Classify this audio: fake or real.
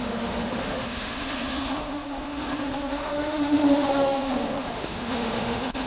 fake